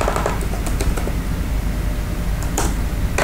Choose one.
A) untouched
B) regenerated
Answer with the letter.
A